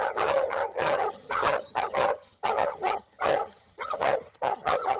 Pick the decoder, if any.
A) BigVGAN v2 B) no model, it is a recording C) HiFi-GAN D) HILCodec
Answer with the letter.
C